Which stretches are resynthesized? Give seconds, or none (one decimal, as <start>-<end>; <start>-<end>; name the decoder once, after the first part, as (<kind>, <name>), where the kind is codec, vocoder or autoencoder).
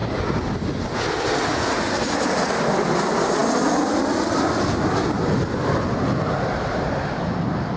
none